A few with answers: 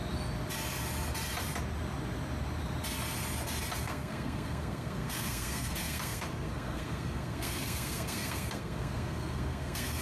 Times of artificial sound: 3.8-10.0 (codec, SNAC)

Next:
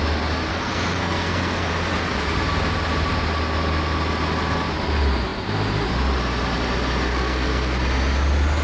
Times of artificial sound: 0.5-1.7 (codec, SNAC); 7.1-7.8

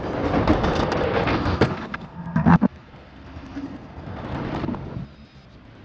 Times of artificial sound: 1.3-4.2 (codec, SNAC)

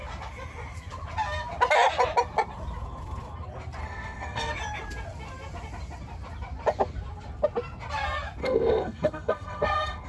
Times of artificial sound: 3.8-4.5 (codec, SNAC); 8.4-10.1

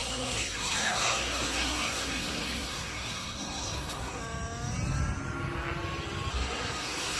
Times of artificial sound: 0.0-4.2 (codec, SNAC); 6.3-7.2

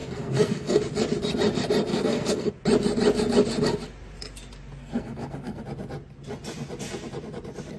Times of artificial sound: 0.0-0.8 (codec, SNAC); 1.9-2.5; 4.8-5.6

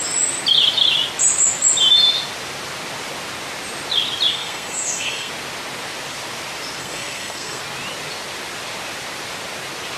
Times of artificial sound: 4.3-5.3 (codec, SNAC); 6.8-7.6